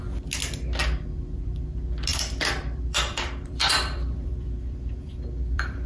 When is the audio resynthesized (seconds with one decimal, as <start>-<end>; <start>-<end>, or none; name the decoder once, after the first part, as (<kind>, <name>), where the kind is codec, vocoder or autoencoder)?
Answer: 2.1-5.9 (vocoder, BigVGAN v2)